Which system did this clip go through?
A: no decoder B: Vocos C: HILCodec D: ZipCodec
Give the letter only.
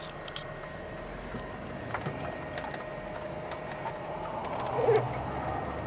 A